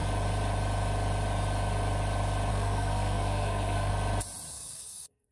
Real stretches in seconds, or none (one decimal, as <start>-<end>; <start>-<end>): 0.0-2.5; 3.9-4.5